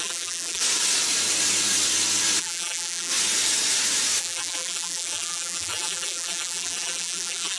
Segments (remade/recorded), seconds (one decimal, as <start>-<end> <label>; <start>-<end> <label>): 0.0-0.6 remade; 0.6-2.4 recorded; 2.4-3.1 remade; 3.1-4.2 recorded; 4.2-7.6 remade